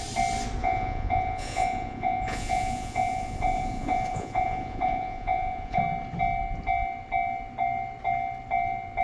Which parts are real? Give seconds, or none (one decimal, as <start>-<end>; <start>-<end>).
0.0-0.6; 5.8-9.0